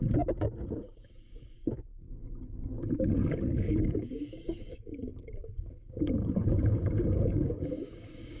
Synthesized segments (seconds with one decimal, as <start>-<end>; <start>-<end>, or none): 0.0-8.4

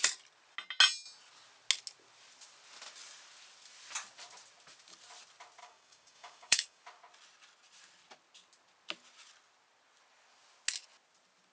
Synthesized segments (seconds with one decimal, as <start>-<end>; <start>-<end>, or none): 5.6-6.8

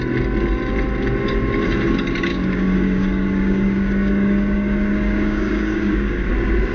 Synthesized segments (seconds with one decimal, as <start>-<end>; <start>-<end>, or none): 2.3-6.3

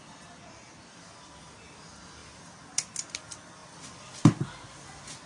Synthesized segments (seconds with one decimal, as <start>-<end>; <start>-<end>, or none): none